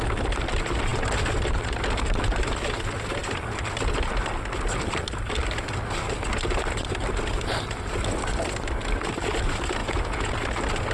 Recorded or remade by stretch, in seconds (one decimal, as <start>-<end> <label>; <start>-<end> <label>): 0.0-9.8 recorded; 9.8-10.3 remade; 10.3-10.9 recorded